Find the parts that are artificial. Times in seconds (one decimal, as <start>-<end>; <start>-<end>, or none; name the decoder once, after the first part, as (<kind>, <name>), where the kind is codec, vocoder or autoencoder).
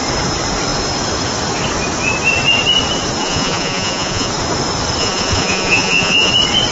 3.2-4.3 (vocoder, Vocos); 5.0-6.3